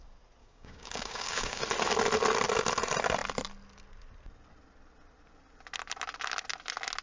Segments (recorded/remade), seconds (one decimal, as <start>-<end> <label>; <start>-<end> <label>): 0.0-0.4 recorded; 0.4-1.6 remade; 1.6-7.0 recorded